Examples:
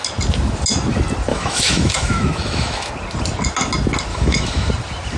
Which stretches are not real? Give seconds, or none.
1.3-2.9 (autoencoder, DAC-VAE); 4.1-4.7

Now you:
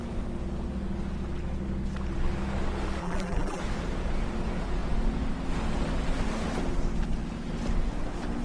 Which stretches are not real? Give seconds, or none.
3.0-3.6 (vocoder, BigVGAN v2)

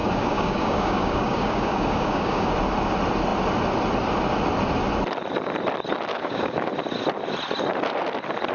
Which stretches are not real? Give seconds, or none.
0.0-2.5 (codec, DAC); 6.1-6.7

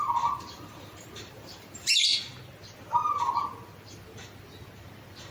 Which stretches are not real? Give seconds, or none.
0.0-2.1 (vocoder, BigVGAN v2)

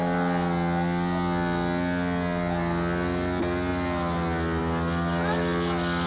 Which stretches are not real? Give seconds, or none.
none

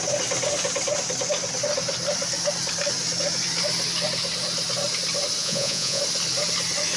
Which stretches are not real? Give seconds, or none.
5.4-6.0 (vocoder, Vocos)

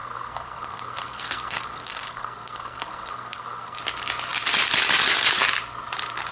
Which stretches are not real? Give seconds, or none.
0.0-3.8 (codec, SNAC)

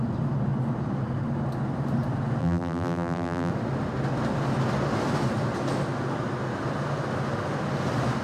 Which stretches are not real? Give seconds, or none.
2.4-3.5 (vocoder, BigVGAN v2)